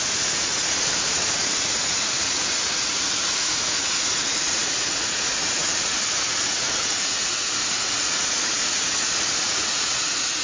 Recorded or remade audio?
remade